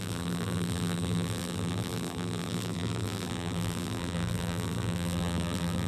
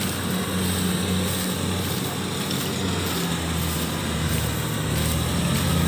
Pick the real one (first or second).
second